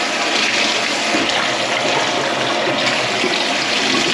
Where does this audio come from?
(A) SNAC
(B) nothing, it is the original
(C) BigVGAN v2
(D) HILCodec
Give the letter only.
B